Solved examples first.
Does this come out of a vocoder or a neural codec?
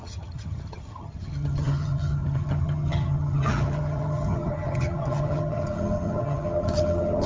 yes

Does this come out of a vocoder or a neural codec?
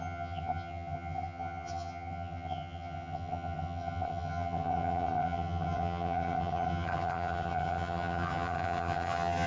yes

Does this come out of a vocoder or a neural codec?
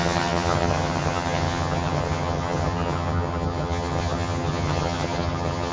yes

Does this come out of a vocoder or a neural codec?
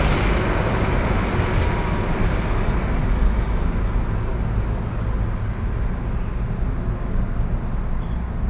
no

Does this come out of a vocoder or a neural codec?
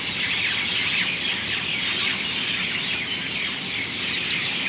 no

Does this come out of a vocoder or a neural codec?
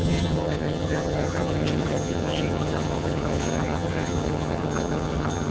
yes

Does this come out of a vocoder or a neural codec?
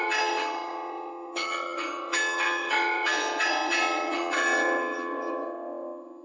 yes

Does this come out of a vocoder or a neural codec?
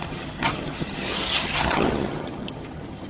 yes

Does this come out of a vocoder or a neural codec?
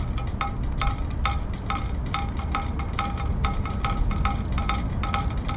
no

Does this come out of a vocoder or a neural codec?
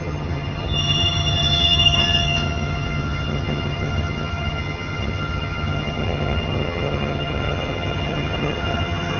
yes